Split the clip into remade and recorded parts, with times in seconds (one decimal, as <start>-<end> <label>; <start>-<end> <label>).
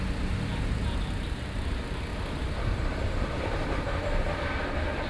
0.0-2.1 recorded; 2.1-3.8 remade; 3.8-5.1 recorded